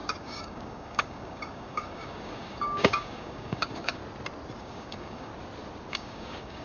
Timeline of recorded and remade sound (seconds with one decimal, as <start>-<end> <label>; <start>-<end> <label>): 0.0-4.0 remade; 4.0-4.6 recorded; 4.6-5.3 remade; 5.3-5.9 recorded; 5.9-6.6 remade